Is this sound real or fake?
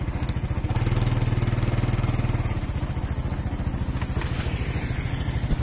real